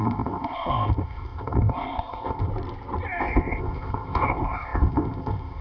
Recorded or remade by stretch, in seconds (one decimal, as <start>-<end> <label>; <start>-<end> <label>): 0.0-2.5 remade; 2.5-3.2 recorded; 3.2-5.6 remade